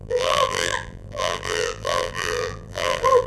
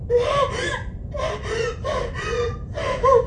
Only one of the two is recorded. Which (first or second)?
second